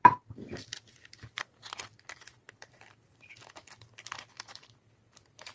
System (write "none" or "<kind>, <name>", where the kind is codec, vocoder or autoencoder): vocoder, BigVGAN v2